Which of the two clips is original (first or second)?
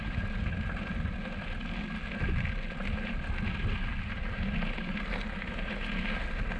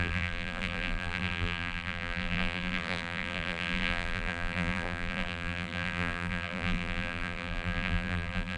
first